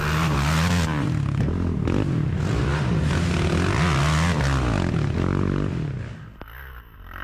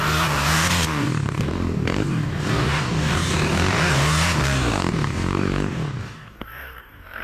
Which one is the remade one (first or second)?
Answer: second